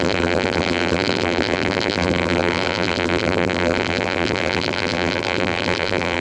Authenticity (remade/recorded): remade